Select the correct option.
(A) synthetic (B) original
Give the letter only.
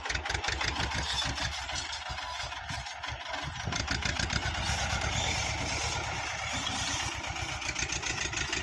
B